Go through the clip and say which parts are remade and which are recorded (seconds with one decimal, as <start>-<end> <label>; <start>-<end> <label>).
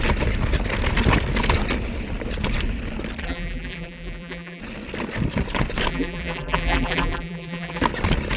0.0-3.2 recorded; 3.2-4.6 remade; 4.6-5.9 recorded; 5.9-7.8 remade; 7.8-8.4 recorded